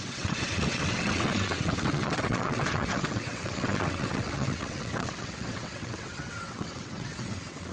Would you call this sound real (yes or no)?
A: no